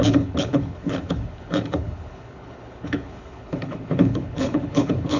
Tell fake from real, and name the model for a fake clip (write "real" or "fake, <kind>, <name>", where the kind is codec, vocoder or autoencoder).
fake, codec, HILCodec